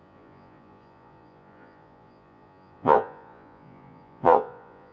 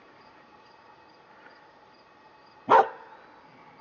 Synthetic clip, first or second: first